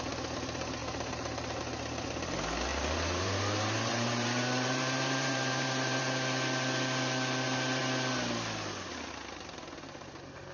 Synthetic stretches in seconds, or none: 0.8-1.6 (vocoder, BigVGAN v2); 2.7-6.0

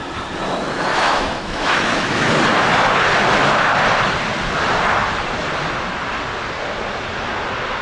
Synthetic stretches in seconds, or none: 0.9-2.3 (autoencoder, DAC-VAE)